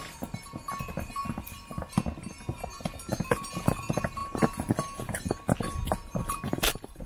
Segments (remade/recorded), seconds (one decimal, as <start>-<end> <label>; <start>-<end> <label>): 0.0-7.1 recorded

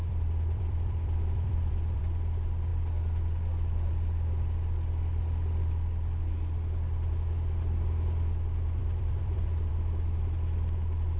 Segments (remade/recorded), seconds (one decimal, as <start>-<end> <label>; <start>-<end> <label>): 0.0-2.0 remade; 2.0-8.8 recorded; 8.8-9.7 remade; 9.7-11.2 recorded